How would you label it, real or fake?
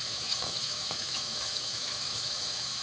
fake